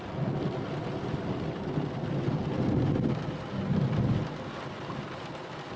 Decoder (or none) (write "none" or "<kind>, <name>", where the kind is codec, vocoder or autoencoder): none